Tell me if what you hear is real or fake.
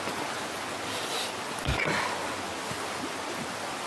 real